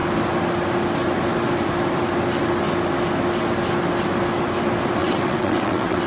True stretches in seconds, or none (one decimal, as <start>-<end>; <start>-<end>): 0.0-5.0